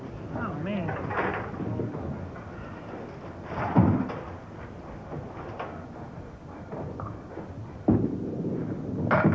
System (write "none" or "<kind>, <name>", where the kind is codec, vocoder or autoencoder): none